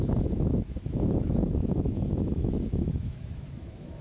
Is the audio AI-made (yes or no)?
yes